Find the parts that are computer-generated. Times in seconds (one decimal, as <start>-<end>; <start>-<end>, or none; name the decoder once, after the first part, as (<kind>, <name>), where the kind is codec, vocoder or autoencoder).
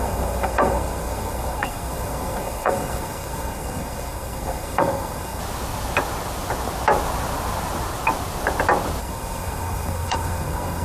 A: 0.0-5.4 (codec, SNAC); 9.0-10.8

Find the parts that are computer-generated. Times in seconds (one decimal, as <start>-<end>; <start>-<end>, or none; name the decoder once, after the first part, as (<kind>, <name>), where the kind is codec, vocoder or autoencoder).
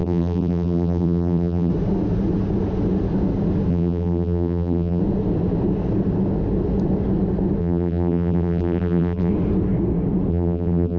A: 0.0-1.7 (vocoder, BigVGAN v2); 3.7-5.0; 7.6-9.3; 10.3-11.0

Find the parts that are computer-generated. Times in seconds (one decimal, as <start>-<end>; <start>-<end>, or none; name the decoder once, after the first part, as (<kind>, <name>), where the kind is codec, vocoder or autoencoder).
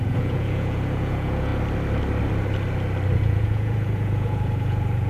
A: 0.0-1.5 (vocoder, Vocos); 3.1-5.1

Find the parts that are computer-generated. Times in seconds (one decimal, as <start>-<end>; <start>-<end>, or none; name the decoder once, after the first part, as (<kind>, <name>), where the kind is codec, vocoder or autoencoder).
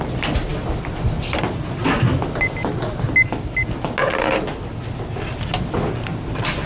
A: none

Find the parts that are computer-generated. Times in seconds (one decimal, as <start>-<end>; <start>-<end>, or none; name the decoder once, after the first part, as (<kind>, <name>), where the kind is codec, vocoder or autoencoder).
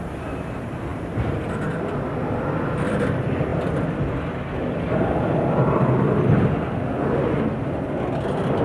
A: 0.0-8.6 (vocoder, BigVGAN v2)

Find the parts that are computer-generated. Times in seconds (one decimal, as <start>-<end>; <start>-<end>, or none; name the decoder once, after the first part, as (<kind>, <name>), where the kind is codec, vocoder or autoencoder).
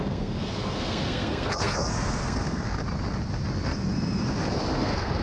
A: 0.0-2.8 (codec, SNAC); 4.7-5.2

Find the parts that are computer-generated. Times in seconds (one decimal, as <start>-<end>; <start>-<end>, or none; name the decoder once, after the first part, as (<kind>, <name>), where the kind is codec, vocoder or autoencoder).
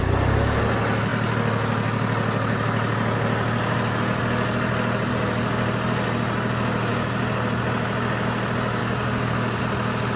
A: 8.8-9.6 (codec, DAC)